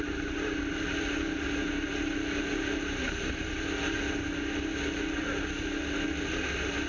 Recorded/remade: recorded